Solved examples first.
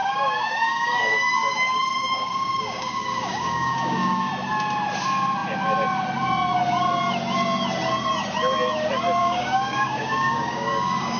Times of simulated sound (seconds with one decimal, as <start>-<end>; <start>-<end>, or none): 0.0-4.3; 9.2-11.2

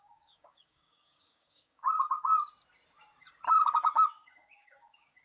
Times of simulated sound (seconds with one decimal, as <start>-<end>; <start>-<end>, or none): 0.0-2.3; 3.5-5.2

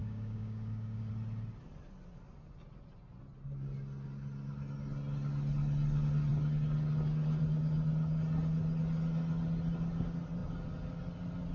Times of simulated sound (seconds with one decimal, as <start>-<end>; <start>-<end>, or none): 0.0-1.1

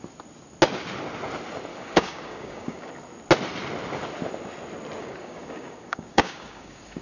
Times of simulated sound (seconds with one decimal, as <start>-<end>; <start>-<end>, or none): 1.7-2.9; 5.0-7.0

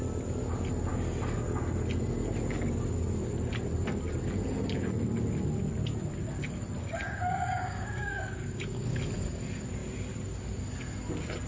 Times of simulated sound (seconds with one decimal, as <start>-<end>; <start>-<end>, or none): 6.8-9.0